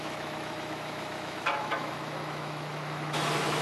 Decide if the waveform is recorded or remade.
remade